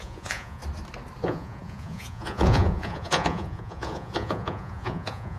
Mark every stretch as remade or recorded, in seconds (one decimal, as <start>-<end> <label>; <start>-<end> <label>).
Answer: 0.0-0.6 remade; 0.6-1.2 recorded; 1.2-5.4 remade

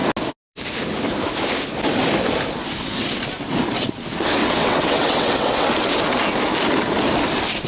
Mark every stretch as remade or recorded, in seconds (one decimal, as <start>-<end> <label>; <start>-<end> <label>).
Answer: 0.0-4.4 recorded; 4.4-5.7 remade; 5.7-7.7 recorded

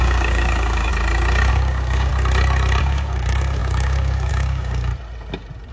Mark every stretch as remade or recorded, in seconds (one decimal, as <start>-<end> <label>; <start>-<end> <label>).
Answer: 0.0-0.9 remade; 0.9-1.5 recorded; 1.5-2.1 remade; 2.1-2.8 recorded; 2.8-4.9 remade; 4.9-5.7 recorded

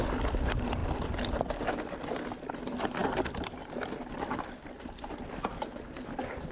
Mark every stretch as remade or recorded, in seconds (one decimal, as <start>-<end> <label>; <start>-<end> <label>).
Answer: 0.0-0.8 recorded; 0.8-2.2 remade; 2.2-3.0 recorded; 3.0-5.3 remade; 5.3-6.5 recorded

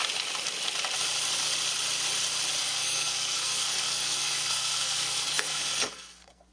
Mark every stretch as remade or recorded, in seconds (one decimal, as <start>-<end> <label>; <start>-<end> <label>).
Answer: 0.0-2.6 recorded; 2.6-6.5 remade

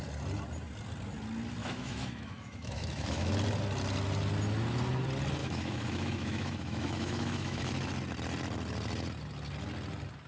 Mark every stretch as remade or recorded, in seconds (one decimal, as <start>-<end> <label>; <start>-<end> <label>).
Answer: 0.0-1.6 recorded; 1.6-3.3 remade; 3.3-5.4 recorded; 5.4-7.7 remade; 7.7-10.3 recorded